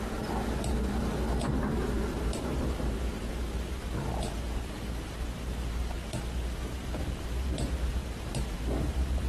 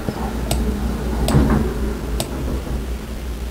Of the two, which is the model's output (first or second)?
first